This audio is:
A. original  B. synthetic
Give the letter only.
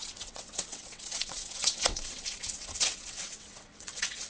B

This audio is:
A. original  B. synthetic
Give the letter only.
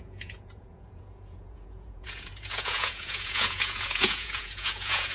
B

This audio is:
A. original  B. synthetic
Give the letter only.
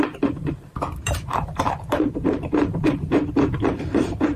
B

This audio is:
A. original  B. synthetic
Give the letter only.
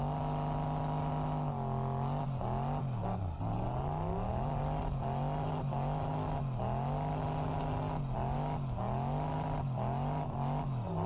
A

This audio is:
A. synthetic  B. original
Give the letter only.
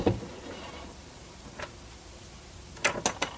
B